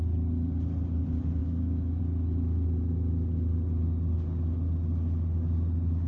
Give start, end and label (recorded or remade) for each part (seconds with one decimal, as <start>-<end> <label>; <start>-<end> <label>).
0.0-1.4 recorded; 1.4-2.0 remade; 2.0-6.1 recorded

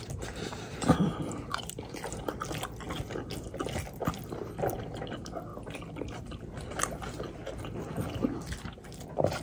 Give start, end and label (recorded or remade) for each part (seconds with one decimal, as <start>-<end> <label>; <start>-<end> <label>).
0.0-9.4 recorded

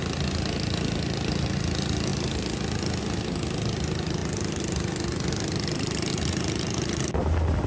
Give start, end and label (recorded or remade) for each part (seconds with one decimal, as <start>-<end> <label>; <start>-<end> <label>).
0.0-7.7 recorded

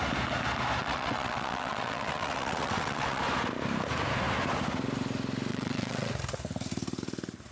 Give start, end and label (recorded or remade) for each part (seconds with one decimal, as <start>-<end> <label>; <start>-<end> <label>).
0.0-0.8 recorded; 0.8-3.2 remade; 3.2-5.5 recorded; 5.5-6.1 remade; 6.1-7.5 recorded